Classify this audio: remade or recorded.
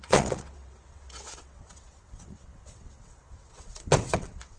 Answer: remade